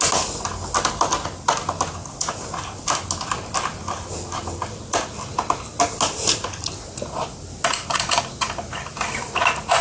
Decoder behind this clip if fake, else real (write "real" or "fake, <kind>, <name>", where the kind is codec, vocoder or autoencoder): real